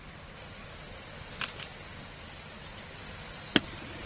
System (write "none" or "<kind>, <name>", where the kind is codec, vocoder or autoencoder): none